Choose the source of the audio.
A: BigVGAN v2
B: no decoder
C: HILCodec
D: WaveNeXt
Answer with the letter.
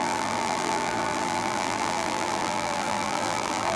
A